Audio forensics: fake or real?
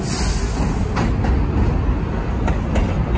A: real